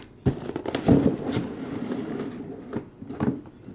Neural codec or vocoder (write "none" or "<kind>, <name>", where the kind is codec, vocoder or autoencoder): none